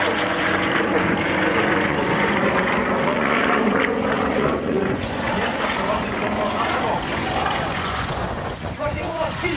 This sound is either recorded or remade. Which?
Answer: remade